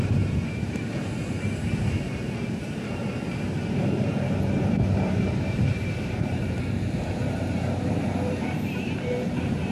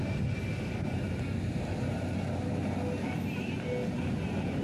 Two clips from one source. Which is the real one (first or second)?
second